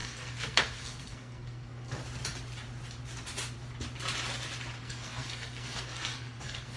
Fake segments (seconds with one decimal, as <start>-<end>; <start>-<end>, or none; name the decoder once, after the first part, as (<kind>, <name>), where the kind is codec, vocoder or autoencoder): 0.0-2.0 (codec, SNAC); 4.8-6.8